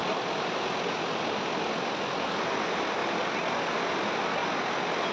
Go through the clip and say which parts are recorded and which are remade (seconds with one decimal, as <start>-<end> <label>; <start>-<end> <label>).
0.0-4.4 recorded; 4.4-5.1 remade